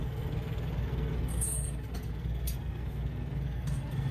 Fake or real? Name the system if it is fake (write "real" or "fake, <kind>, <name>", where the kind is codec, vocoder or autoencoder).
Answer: fake, codec, SNAC